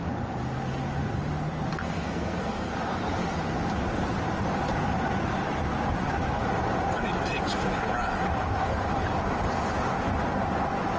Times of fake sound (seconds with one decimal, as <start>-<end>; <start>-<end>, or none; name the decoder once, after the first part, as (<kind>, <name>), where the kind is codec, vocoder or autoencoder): 1.7-2.7 (codec, SNAC)